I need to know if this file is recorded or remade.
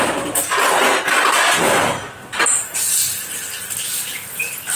recorded